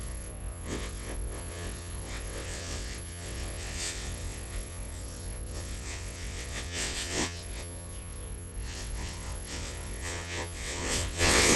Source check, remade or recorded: remade